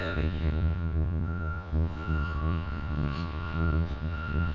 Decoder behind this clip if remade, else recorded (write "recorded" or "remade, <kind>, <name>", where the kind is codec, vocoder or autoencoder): remade, vocoder, Vocos